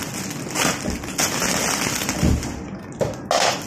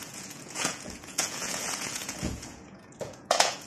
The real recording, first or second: first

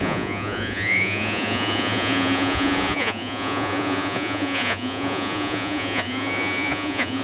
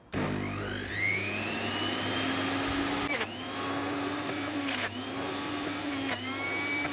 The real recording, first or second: second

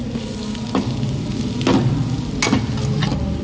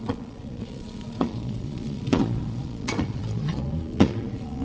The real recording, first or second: first